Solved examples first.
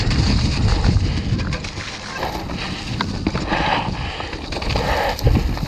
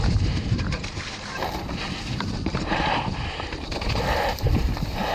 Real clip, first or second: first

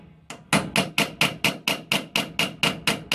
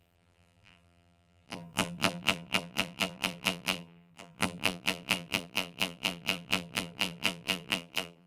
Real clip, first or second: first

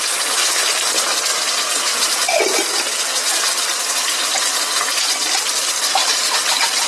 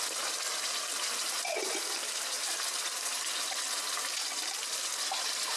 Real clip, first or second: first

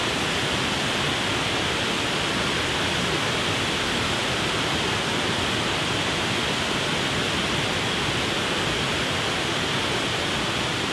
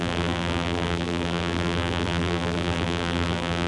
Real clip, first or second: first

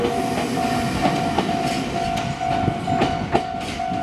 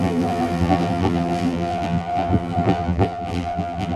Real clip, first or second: first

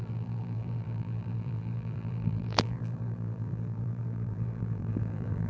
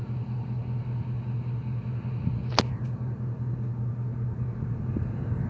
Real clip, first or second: second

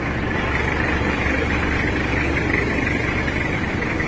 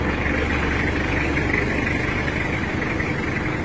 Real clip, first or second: second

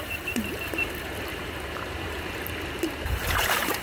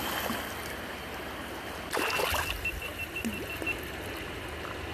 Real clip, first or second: second